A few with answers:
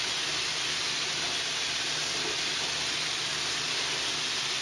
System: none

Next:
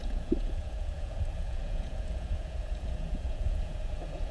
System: vocoder, Vocos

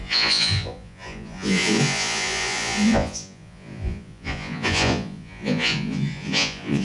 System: vocoder, Vocos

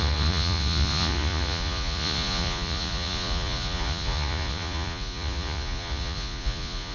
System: vocoder, Vocos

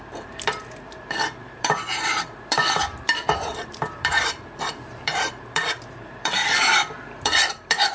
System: vocoder, BigVGAN v2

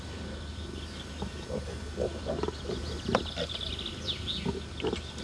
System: none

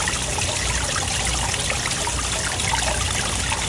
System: none